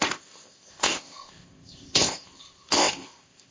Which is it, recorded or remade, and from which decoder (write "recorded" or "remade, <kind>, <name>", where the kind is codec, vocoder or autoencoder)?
remade, codec, ZipCodec